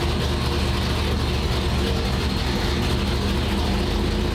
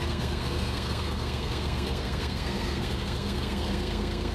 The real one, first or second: first